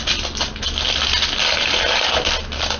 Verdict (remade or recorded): recorded